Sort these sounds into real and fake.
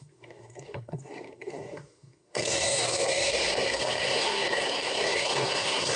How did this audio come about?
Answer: fake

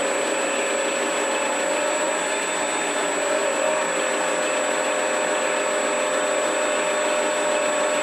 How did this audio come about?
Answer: real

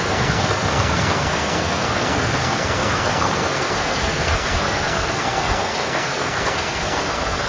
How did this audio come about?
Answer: fake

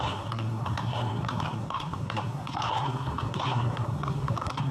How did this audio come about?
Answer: fake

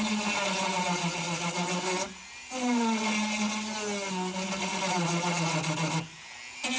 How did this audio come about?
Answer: real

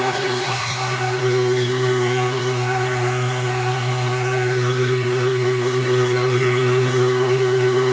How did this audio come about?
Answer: fake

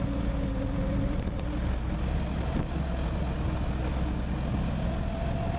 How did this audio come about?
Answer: real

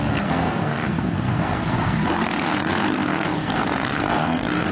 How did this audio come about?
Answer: fake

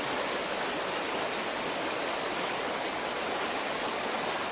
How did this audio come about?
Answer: real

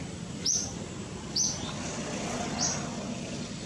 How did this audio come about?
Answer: real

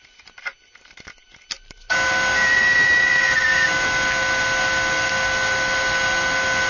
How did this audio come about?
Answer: real